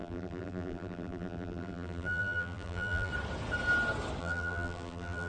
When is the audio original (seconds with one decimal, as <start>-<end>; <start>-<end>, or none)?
3.1-4.2